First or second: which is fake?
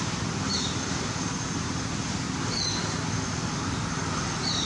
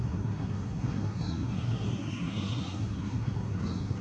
second